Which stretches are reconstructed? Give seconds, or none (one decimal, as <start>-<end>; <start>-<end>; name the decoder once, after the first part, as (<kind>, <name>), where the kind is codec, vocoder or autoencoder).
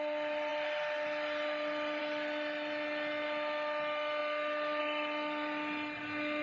none